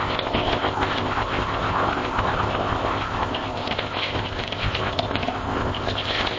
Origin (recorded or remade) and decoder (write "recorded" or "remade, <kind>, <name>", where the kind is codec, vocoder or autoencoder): remade, codec, ZipCodec